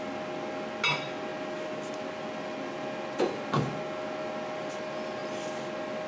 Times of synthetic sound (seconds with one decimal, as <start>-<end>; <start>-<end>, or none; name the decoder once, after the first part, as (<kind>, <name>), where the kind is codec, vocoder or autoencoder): none